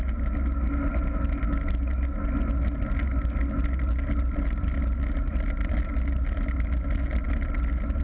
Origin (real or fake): real